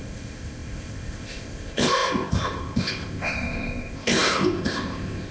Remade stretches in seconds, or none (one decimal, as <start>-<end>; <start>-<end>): 0.0-5.3